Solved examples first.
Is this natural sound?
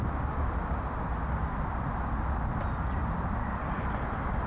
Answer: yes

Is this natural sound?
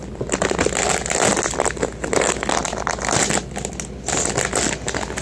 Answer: yes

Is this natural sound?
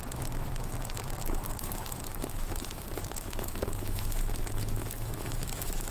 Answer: no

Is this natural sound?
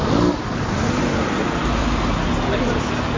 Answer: yes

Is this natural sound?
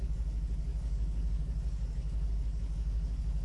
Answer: no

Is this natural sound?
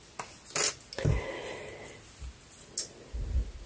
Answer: yes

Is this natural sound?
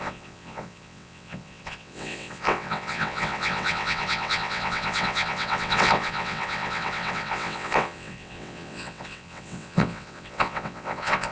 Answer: no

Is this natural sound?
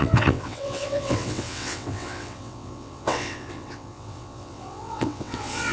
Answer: no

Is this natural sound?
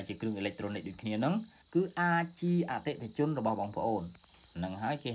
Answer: yes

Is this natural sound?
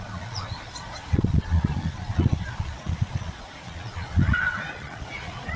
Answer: no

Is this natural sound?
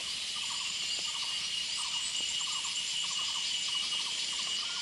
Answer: no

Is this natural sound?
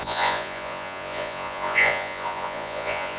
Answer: no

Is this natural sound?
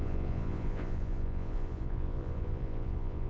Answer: no